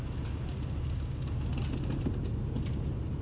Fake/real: real